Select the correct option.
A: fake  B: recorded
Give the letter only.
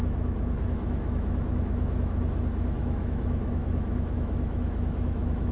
A